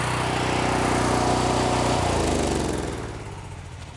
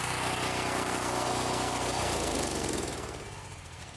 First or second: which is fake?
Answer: second